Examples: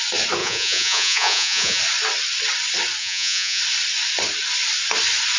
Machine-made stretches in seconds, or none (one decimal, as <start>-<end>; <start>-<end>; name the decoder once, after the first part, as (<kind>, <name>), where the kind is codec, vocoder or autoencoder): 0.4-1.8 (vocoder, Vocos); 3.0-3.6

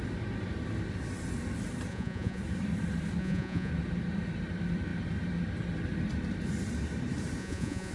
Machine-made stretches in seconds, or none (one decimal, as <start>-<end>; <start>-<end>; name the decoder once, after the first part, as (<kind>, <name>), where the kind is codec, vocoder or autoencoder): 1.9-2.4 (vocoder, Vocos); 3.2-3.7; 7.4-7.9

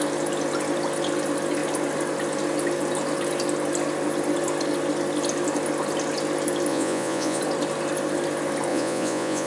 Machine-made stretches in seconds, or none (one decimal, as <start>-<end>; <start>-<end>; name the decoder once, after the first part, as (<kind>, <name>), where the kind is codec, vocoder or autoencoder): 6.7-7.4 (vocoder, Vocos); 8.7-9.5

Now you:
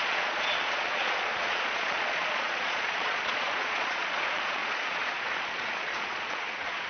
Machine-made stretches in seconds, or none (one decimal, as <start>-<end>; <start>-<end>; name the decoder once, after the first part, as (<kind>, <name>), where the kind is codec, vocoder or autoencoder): 0.0-6.9 (vocoder, Vocos)